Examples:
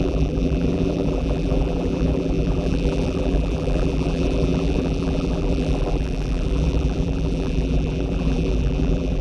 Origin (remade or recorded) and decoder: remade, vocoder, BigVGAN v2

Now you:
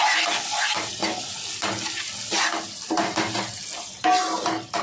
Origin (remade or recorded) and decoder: recorded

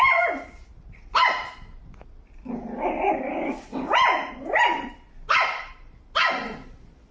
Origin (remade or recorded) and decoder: recorded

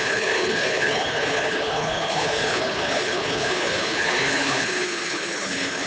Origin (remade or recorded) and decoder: remade, codec, HILCodec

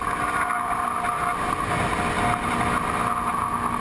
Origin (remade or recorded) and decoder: recorded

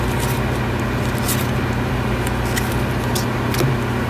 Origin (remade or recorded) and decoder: recorded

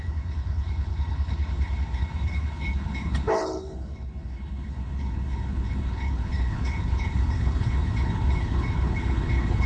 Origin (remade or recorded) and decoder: remade, codec, HILCodec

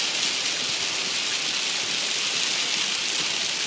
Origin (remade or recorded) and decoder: recorded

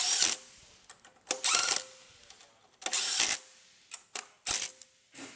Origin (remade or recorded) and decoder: recorded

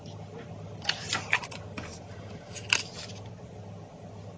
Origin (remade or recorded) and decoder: recorded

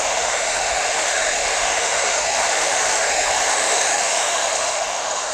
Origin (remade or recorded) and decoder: remade, autoencoder, DAC-VAE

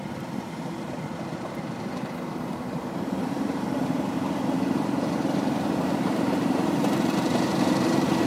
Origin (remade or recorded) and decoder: remade, vocoder, BigVGAN v2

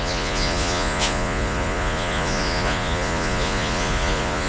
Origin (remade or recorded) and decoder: remade, vocoder, Vocos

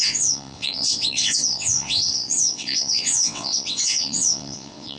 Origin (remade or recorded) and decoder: remade, vocoder, WaveNeXt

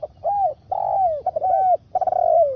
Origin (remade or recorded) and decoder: recorded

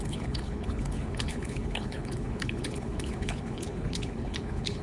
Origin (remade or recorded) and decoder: remade, codec, HILCodec